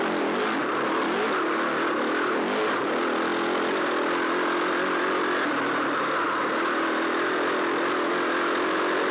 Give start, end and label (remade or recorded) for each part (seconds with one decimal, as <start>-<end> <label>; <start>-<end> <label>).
0.0-9.1 recorded